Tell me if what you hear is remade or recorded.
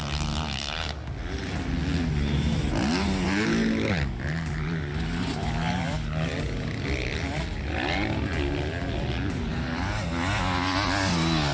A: recorded